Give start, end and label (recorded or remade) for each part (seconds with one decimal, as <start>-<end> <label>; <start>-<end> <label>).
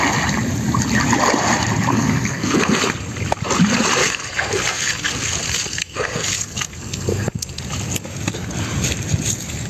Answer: 0.0-1.9 recorded; 1.9-2.8 remade; 2.8-4.0 recorded; 4.0-7.6 remade; 7.6-9.7 recorded